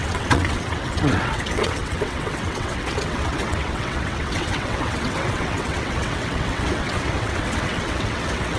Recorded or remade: remade